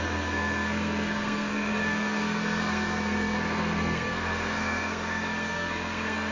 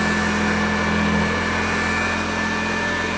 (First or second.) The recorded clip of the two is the second